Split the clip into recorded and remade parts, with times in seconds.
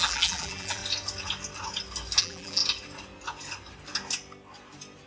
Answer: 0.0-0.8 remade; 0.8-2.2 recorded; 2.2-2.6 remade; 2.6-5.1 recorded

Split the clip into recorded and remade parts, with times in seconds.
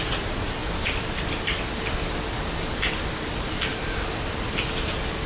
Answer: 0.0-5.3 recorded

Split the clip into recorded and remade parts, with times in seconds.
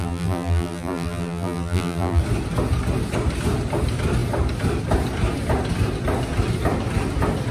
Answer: 0.0-2.2 remade; 2.2-7.5 recorded